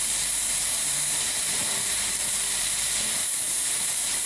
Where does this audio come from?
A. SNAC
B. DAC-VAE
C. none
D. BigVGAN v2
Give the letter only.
D